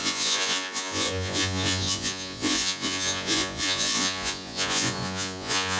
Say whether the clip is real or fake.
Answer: fake